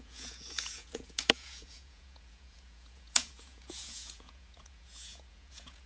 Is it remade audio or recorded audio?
remade